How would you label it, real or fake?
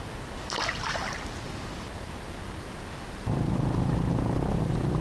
real